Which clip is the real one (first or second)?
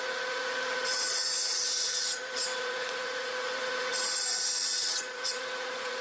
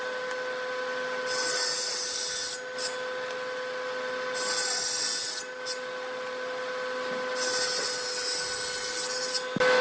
second